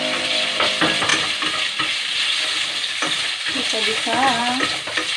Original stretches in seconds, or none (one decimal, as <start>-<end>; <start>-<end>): 0.0-5.2